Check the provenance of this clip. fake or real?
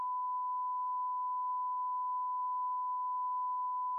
fake